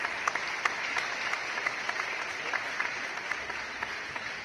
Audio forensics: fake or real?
real